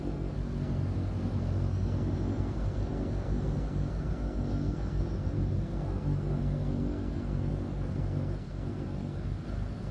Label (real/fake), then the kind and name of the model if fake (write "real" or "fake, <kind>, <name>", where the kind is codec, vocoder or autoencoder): fake, codec, SNAC